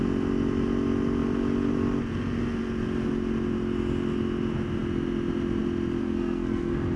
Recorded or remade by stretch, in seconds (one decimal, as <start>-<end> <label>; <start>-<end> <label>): 0.0-6.0 recorded; 6.0-7.0 remade